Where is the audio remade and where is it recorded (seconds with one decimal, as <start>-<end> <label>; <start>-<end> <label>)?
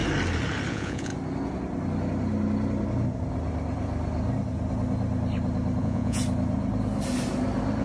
0.0-0.7 recorded; 0.7-1.1 remade; 1.1-5.8 recorded; 5.8-6.2 remade; 6.2-7.8 recorded